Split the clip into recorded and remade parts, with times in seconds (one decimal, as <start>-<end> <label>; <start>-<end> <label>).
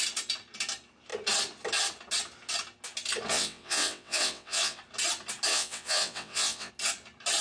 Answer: 0.0-3.3 recorded; 3.3-4.8 remade; 4.8-5.5 recorded; 5.5-6.7 remade; 6.7-7.4 recorded